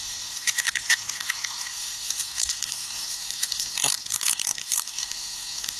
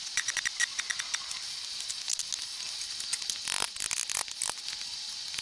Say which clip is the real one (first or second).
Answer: second